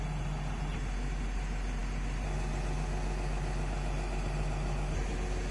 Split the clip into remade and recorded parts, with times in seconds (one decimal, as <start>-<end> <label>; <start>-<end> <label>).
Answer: 0.0-5.5 recorded